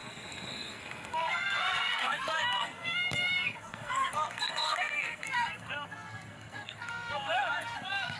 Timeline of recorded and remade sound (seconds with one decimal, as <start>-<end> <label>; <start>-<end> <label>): 0.0-8.2 remade